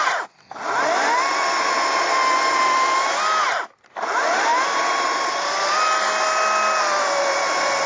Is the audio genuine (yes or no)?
yes